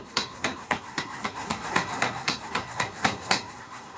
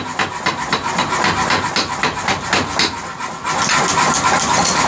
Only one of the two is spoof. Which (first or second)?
first